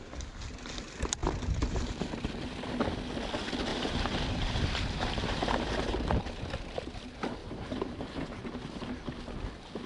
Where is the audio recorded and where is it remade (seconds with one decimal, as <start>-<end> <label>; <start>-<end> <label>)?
0.0-1.2 recorded; 1.2-2.7 remade; 2.7-3.7 recorded; 3.7-6.4 remade; 6.4-7.4 recorded; 7.4-8.9 remade; 8.9-9.9 recorded